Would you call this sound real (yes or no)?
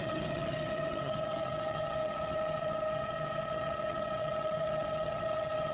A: no